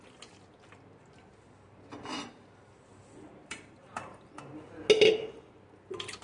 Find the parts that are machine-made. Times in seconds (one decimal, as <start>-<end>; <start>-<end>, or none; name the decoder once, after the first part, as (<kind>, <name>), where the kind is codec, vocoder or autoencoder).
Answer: 3.4-4.4 (vocoder, BigVGAN v2)